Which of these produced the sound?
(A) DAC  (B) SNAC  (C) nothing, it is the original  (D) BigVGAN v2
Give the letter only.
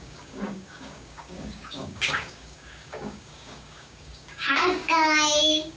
A